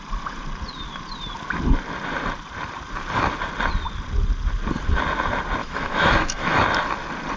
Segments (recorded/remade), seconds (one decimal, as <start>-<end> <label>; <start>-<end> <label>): 0.0-5.6 recorded; 5.6-6.6 remade; 6.6-7.4 recorded